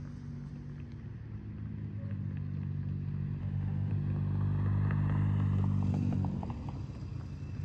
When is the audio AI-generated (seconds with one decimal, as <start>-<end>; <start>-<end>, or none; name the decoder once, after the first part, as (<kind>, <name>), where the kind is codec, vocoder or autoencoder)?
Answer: 3.4-3.9 (autoencoder, DAC-VAE)